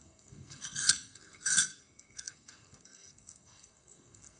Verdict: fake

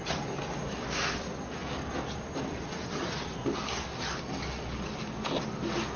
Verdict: real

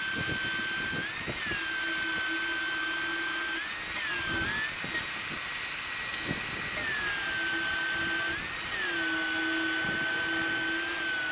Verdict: real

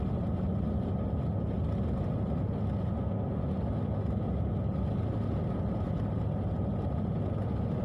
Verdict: real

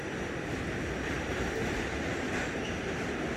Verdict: real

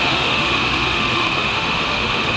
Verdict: fake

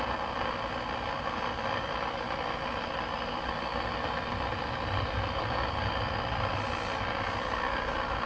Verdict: real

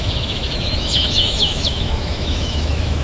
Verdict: fake